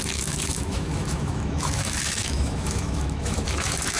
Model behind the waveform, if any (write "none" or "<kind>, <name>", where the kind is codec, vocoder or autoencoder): autoencoder, DAC-VAE